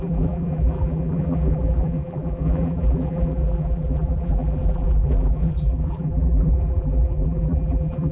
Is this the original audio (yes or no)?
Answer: no